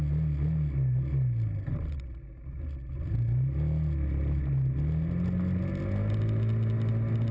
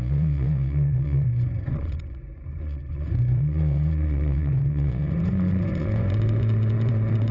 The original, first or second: first